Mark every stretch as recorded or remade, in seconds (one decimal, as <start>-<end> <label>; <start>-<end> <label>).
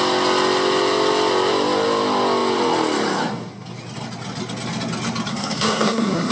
0.0-5.3 recorded; 5.3-6.3 remade